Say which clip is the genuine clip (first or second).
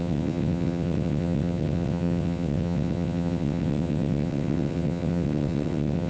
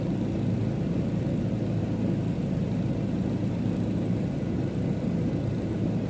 second